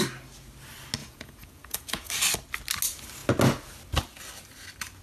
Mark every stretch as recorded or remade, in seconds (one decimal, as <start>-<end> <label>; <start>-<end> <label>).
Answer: 0.0-1.0 recorded; 1.0-2.1 remade; 2.1-5.0 recorded